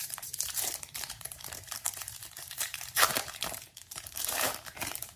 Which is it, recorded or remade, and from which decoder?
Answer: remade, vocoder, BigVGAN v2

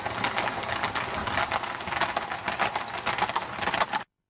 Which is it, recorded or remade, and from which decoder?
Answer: recorded